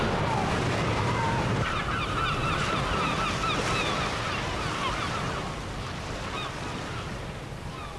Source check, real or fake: real